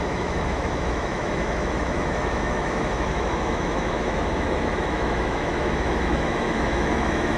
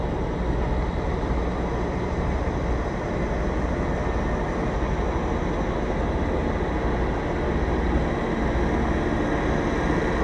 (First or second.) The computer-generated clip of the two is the first